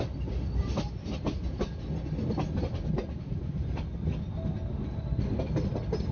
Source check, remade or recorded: recorded